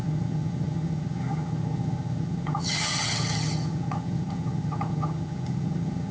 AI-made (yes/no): yes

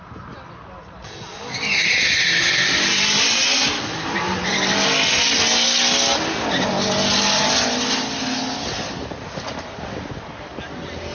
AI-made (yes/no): no